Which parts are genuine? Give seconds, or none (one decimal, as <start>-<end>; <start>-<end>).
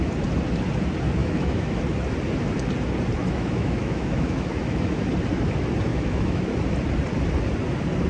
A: 0.0-1.2; 1.8-3.2; 5.1-5.9; 6.4-8.1